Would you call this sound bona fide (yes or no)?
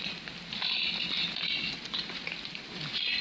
yes